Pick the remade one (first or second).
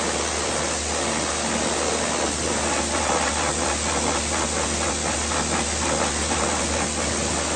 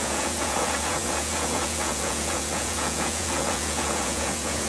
second